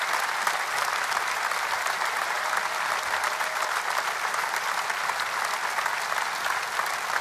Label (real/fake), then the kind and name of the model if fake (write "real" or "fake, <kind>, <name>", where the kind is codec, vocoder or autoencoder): real